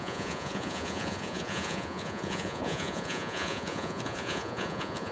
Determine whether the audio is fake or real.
fake